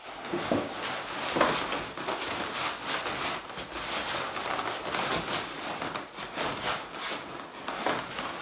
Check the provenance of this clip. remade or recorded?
recorded